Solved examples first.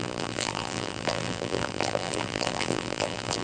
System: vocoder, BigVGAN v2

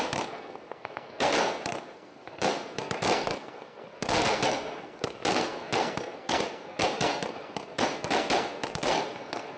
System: codec, SNAC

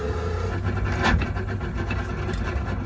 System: none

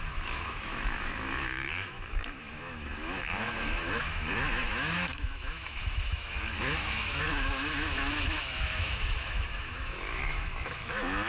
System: autoencoder, DAC-VAE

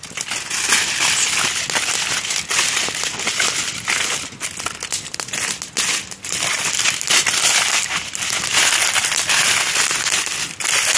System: none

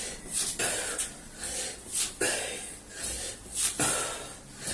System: none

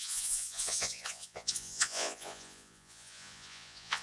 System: vocoder, Vocos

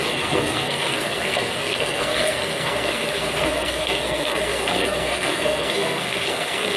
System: codec, SNAC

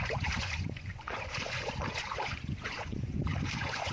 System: vocoder, Vocos